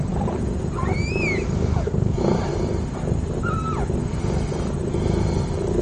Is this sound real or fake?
real